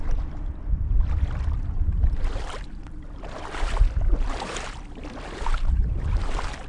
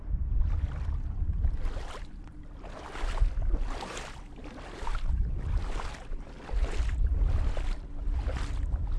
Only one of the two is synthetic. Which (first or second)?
first